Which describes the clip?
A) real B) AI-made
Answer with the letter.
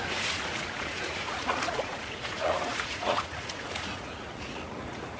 B